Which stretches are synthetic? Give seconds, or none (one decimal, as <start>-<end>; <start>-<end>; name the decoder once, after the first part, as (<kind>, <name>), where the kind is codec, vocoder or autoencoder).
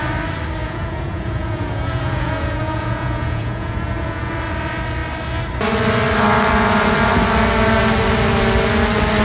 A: 0.6-4.3 (vocoder, Vocos)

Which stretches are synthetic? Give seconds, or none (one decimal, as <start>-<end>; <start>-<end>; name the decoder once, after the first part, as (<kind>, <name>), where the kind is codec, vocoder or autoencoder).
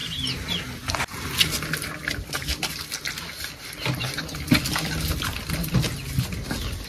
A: none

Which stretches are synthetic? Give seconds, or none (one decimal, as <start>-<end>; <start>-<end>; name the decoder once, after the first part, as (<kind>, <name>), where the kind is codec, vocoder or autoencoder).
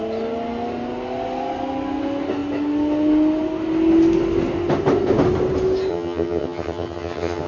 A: 5.9-7.5 (vocoder, HiFi-GAN)